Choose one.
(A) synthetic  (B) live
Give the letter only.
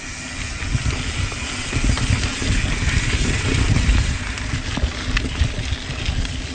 B